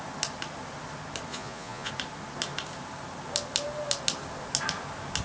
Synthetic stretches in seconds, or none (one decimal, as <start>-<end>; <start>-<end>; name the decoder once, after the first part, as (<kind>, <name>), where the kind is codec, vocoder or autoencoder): 1.3-1.9 (vocoder, Vocos)